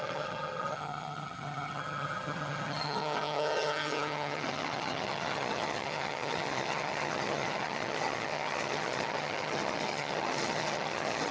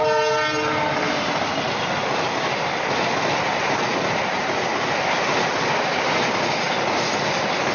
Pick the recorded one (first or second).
second